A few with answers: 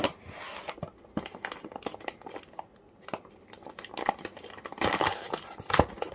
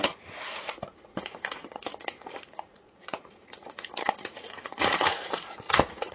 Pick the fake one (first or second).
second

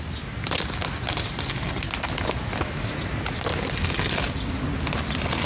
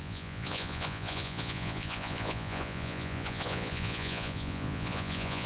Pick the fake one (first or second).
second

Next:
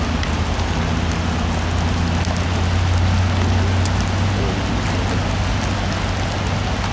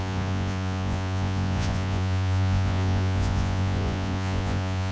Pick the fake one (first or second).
second